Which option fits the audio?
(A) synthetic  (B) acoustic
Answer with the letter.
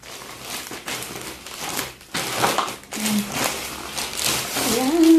B